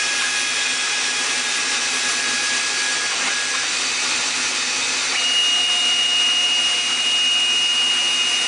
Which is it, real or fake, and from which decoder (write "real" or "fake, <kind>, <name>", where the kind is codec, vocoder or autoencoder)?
real